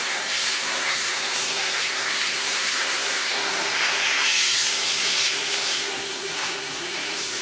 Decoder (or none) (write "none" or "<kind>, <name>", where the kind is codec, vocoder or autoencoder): codec, SNAC